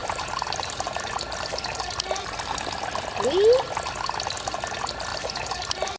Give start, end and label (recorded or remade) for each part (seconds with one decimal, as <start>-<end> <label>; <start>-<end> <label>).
0.0-1.1 remade; 1.1-5.1 recorded; 5.1-6.0 remade